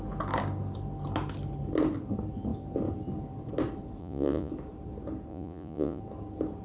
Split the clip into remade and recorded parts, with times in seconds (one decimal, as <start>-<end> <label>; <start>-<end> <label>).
0.0-4.0 recorded; 4.0-4.5 remade; 4.5-5.3 recorded; 5.3-6.0 remade; 6.0-6.6 recorded